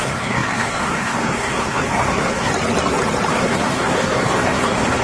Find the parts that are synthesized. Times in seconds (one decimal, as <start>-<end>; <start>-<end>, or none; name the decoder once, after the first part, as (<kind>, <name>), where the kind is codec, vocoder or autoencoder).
0.0-2.5 (codec, SNAC); 3.3-5.0